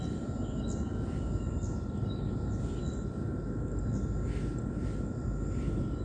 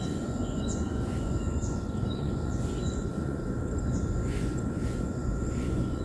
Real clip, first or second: first